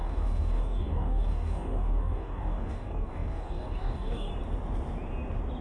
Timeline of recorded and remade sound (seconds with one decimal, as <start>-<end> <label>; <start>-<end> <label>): 0.0-4.3 remade; 4.3-5.6 recorded